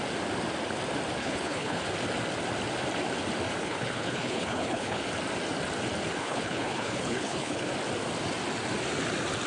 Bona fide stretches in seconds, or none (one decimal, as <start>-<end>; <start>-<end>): 0.0-1.2; 1.8-3.6; 5.0-6.2; 7.7-9.5